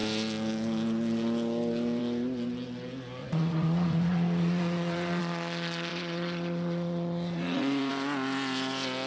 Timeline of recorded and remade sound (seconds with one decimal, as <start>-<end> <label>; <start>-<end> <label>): 0.0-3.2 recorded; 3.2-5.2 remade; 5.2-5.9 recorded; 5.9-7.9 remade; 7.9-9.1 recorded